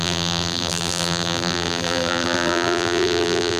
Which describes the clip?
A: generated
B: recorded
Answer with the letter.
A